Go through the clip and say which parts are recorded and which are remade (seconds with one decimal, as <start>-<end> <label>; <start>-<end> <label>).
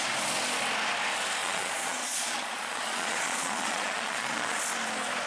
0.0-1.4 recorded; 1.4-4.6 remade; 4.6-5.3 recorded